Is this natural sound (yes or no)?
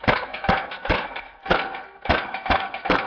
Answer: no